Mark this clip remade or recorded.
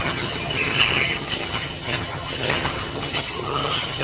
remade